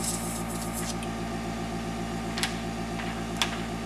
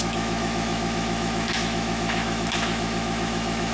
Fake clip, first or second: second